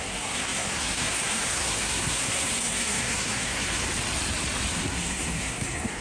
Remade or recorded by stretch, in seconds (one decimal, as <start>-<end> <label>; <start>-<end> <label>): 0.0-3.8 remade; 3.8-4.7 recorded; 4.7-6.0 remade